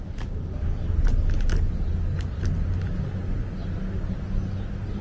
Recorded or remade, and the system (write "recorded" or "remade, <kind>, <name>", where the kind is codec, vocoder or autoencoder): recorded